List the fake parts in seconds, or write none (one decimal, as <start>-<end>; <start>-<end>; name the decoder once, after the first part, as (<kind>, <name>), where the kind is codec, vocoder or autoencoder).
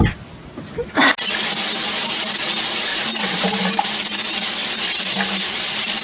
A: 2.9-3.8 (vocoder, BigVGAN v2)